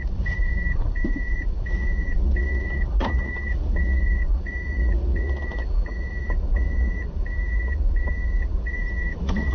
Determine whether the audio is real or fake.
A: fake